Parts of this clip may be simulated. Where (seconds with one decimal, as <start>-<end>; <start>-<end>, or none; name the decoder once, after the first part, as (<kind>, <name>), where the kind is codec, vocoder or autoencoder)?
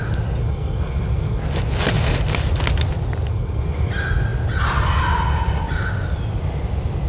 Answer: 0.4-1.4 (codec, SNAC); 3.3-3.9